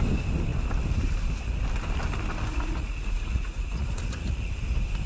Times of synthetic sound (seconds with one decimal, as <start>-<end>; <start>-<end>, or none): 2.5-4.5